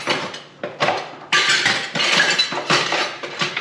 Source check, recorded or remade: recorded